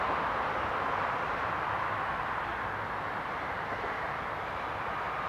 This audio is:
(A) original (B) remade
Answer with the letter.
A